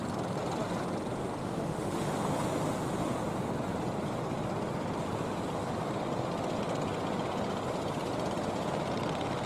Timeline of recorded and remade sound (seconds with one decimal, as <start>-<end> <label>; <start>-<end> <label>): 0.0-1.4 recorded; 1.4-2.1 remade; 2.1-9.5 recorded